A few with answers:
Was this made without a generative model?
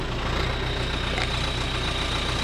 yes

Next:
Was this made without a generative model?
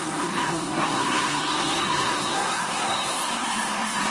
no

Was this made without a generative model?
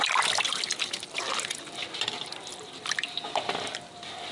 yes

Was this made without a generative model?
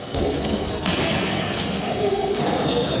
no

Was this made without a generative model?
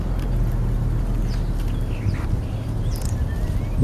yes